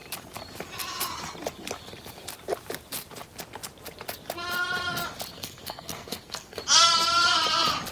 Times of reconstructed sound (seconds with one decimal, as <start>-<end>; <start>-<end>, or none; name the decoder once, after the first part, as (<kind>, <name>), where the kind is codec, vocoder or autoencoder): 5.3-6.6 (codec, SNAC)